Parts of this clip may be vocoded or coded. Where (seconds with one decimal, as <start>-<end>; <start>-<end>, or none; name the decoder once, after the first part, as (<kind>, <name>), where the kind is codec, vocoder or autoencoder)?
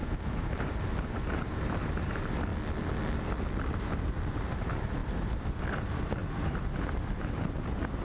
0.0-2.5 (vocoder, BigVGAN v2); 3.7-8.0